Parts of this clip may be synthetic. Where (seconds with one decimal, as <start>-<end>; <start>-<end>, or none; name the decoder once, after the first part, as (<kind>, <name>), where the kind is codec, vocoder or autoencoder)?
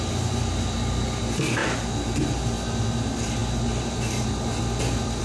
1.6-2.2 (vocoder, BigVGAN v2); 3.4-5.2